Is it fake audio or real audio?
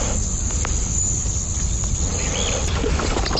real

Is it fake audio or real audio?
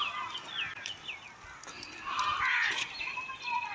real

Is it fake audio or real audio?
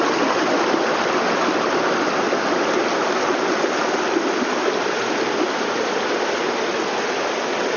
real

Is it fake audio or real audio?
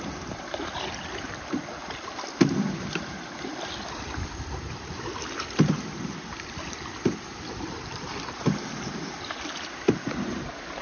fake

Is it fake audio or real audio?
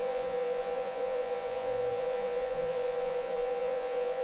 fake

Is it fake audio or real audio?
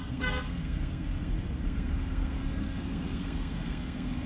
fake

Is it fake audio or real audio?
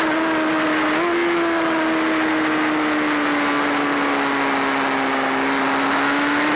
real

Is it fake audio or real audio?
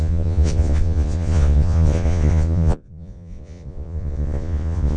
fake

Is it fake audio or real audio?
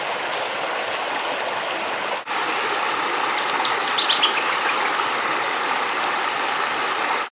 real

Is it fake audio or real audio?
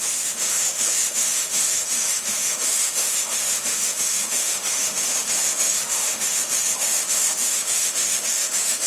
fake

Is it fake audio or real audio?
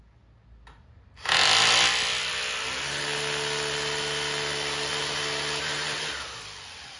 real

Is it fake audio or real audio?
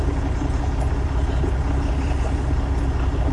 real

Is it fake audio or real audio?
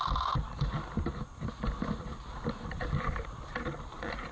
real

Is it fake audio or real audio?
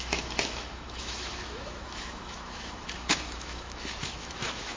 fake